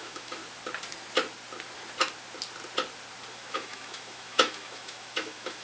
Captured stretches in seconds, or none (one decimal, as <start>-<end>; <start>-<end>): 0.4-3.3

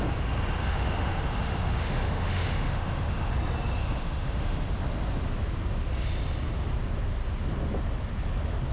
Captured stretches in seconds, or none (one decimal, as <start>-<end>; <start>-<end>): 0.0-0.6; 3.3-3.8; 4.7-8.7

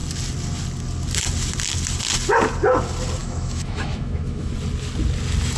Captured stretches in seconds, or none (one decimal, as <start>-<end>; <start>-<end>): 0.0-3.2; 4.5-5.6

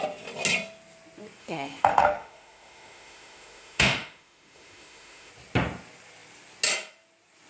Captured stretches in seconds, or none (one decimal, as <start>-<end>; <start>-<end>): 0.0-1.4; 5.3-7.5

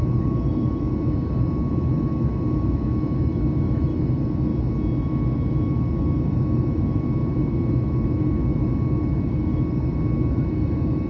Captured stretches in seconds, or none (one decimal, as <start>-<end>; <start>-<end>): 4.5-5.0

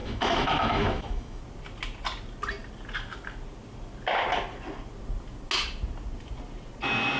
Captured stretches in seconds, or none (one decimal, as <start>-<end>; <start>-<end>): 1.4-7.2

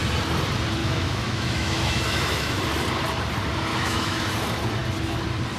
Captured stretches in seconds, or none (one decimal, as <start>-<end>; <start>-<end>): 0.0-0.8; 2.6-3.7; 4.3-5.6